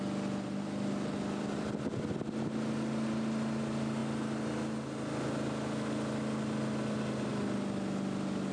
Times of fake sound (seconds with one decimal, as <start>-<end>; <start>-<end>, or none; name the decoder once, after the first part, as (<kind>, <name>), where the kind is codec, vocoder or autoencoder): none